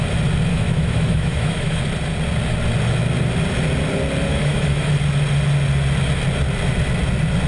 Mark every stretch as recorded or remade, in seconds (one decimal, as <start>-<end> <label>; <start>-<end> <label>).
0.0-0.5 recorded; 0.5-1.8 remade; 1.8-4.3 recorded; 4.3-4.9 remade; 4.9-7.5 recorded